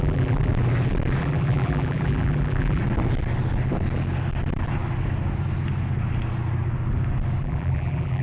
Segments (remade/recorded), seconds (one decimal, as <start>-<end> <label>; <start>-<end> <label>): 0.0-0.5 remade; 0.5-1.2 recorded; 1.2-2.8 remade; 2.8-7.4 recorded; 7.4-8.2 remade